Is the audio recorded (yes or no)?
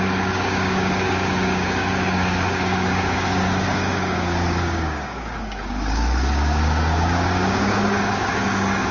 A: no